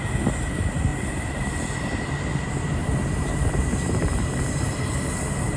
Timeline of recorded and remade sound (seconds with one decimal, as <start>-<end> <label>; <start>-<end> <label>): 0.0-0.9 recorded; 0.9-2.1 remade; 2.1-2.8 recorded; 2.8-4.2 remade; 4.2-5.6 recorded